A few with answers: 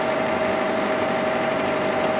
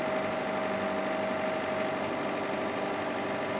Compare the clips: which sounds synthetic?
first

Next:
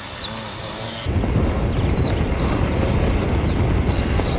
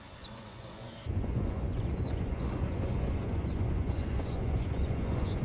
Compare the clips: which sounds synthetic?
second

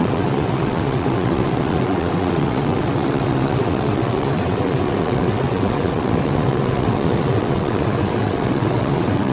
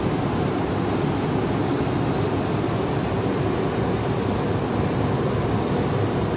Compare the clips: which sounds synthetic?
first